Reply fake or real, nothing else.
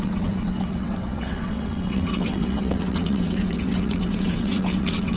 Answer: fake